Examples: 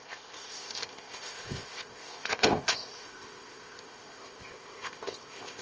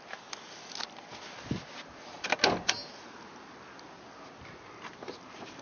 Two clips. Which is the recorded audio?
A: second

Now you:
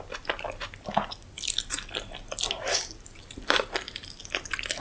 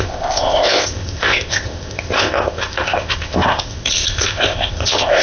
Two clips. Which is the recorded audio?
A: first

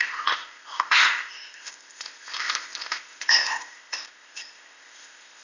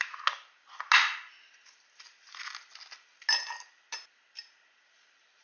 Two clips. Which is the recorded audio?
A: second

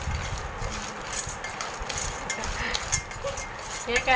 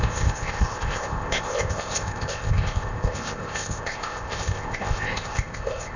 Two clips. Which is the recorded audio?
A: first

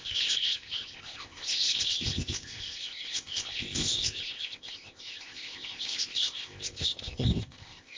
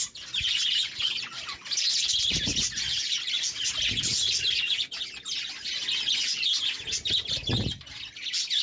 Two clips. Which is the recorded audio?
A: second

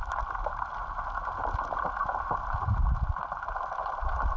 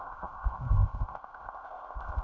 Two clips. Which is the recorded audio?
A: first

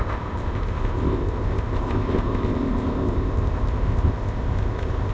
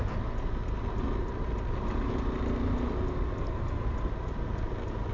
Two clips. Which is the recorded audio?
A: second